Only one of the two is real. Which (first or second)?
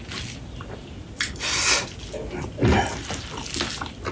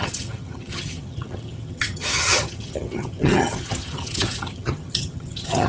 first